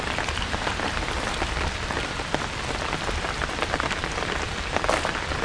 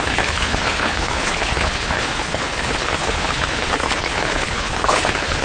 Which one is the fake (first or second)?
second